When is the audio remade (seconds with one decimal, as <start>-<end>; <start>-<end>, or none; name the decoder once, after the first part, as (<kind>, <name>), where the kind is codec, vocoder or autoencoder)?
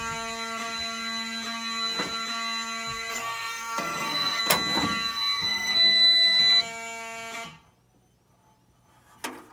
3.1-4.4 (codec, SNAC); 5.1-6.4